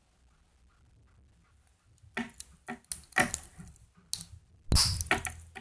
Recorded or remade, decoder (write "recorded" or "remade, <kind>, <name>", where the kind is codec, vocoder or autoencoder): recorded